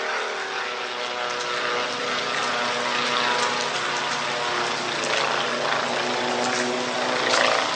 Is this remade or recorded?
recorded